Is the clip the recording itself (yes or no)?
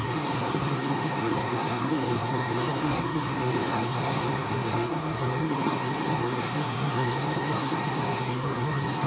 no